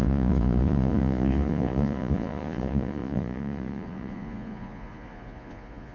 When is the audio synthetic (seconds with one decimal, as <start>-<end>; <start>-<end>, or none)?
0.0-5.9